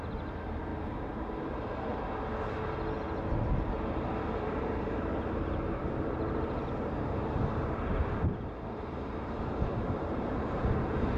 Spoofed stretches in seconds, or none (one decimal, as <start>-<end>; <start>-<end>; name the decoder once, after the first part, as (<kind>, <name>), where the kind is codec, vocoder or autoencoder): 0.0-0.7 (vocoder, BigVGAN v2); 1.5-1.9; 4.2-11.2